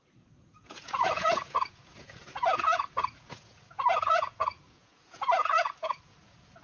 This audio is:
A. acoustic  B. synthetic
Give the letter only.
B